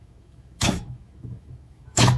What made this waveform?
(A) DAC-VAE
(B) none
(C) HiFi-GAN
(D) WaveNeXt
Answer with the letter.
A